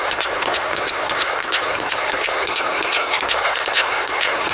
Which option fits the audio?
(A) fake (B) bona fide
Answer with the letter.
A